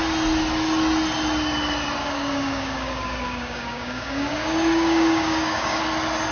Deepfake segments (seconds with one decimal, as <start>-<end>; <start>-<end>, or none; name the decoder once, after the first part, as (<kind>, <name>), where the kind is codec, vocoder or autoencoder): 2.0-5.8 (codec, DAC)